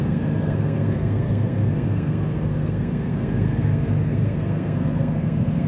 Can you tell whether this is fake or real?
fake